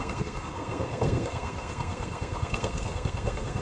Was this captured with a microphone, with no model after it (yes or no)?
no